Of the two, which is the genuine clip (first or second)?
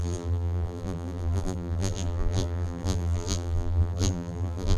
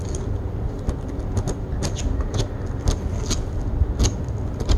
second